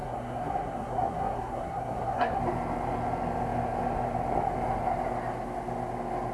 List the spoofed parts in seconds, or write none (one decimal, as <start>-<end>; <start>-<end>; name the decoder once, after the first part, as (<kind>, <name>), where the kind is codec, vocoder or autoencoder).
0.0-2.4 (codec, SNAC)